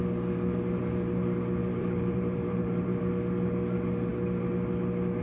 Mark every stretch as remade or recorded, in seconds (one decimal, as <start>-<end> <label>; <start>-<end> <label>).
0.0-1.6 recorded; 1.6-3.0 remade; 3.0-5.2 recorded